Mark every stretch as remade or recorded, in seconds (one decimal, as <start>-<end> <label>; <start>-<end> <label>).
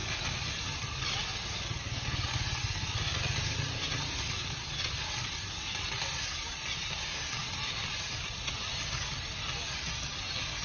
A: 0.0-10.6 recorded